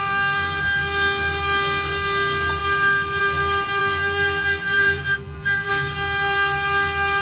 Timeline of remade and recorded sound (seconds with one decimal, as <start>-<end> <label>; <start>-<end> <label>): 0.0-0.6 remade; 0.6-3.8 recorded; 3.8-5.7 remade; 5.7-7.2 recorded